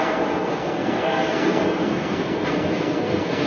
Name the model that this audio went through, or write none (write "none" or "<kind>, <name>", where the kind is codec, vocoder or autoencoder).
codec, SNAC